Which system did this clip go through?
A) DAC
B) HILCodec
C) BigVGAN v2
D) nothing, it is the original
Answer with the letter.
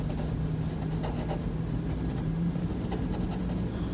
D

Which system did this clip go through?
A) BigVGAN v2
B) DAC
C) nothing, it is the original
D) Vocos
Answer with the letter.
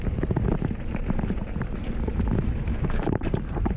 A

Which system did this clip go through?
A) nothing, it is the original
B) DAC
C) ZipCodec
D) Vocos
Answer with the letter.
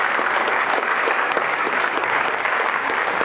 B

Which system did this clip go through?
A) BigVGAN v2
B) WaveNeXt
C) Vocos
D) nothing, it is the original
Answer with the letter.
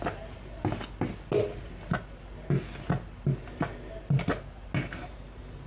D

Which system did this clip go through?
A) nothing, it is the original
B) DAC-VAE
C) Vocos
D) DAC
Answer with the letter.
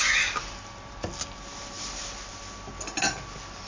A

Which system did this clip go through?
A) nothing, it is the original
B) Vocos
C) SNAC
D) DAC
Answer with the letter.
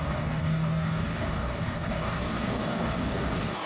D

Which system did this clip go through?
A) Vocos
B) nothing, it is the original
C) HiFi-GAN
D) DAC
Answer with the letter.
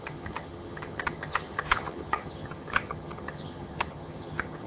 C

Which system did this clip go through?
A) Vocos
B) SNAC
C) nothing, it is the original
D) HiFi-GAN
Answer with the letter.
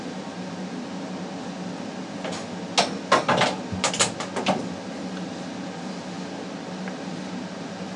C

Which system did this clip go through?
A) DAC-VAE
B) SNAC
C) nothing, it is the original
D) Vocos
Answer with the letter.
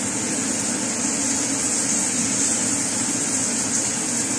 C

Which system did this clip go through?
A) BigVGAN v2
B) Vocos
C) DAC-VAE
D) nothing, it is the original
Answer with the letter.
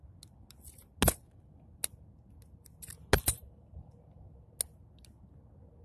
D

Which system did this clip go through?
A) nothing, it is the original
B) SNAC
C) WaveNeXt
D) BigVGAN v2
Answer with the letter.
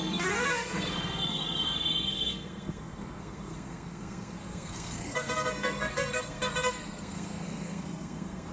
B